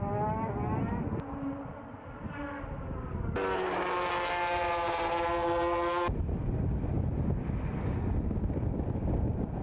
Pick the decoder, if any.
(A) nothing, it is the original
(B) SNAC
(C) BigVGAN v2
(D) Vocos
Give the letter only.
A